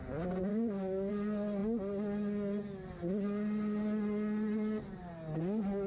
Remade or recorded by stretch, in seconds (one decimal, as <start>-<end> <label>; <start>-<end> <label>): 0.0-0.5 recorded; 0.5-1.1 remade; 1.1-5.9 recorded

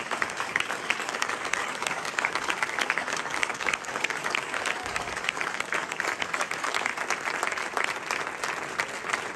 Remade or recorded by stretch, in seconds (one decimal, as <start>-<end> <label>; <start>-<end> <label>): 0.0-6.9 remade; 6.9-9.4 recorded

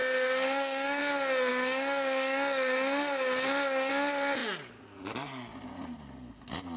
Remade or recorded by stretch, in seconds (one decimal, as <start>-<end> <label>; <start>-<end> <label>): 0.0-1.0 remade; 1.0-1.5 recorded; 1.5-3.9 remade; 3.9-6.8 recorded

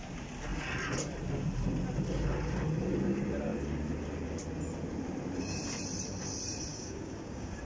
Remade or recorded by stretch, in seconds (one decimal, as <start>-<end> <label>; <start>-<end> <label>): 0.0-6.7 recorded; 6.7-7.6 remade

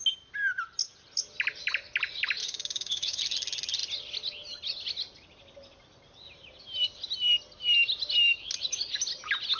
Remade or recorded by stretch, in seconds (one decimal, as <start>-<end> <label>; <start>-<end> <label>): 0.0-2.4 recorded; 2.4-3.2 remade; 3.2-9.6 recorded

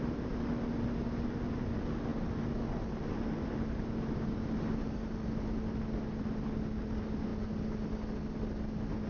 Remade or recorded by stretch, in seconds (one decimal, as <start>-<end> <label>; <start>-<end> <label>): 0.0-9.1 recorded